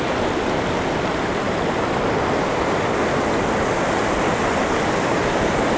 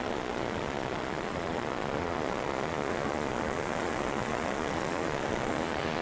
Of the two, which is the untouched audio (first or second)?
first